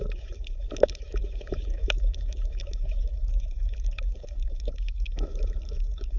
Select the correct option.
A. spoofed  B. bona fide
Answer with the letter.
A